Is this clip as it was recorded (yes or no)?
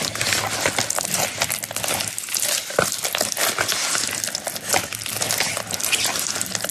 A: yes